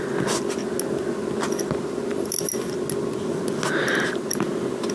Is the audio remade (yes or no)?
no